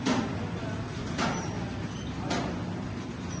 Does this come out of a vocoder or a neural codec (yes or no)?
no